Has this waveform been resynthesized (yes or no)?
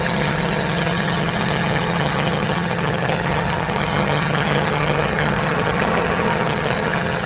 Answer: yes